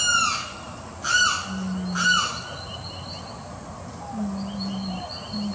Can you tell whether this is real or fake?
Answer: real